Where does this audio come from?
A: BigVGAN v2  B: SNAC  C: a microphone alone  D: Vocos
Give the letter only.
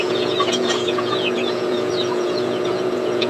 D